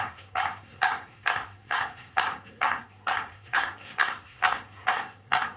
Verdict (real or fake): fake